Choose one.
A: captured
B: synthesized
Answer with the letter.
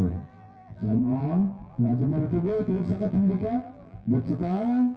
B